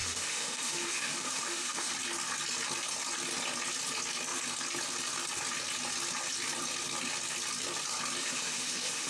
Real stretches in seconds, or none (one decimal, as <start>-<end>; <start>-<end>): 1.9-8.2